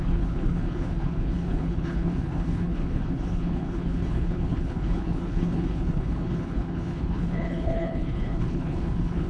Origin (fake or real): fake